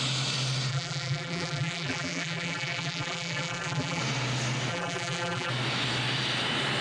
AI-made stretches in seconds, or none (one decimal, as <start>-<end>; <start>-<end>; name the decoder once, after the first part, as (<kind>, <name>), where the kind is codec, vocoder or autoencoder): 0.7-4.0 (vocoder, BigVGAN v2); 4.7-5.5